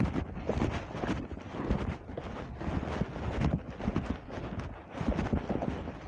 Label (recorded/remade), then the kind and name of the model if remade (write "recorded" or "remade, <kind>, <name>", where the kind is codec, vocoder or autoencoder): recorded